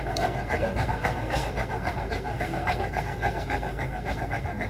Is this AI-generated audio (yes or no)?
yes